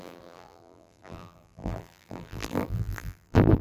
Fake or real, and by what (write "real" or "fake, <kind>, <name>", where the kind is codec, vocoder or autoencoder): fake, vocoder, BigVGAN v2